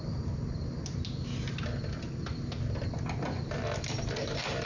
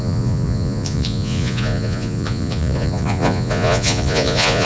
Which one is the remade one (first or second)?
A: second